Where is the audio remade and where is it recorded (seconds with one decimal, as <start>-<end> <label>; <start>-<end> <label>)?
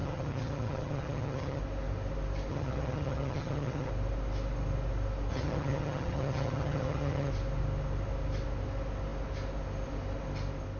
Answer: 0.0-1.6 remade; 1.6-2.5 recorded; 2.5-3.9 remade; 3.9-5.3 recorded; 5.3-7.3 remade; 7.3-10.8 recorded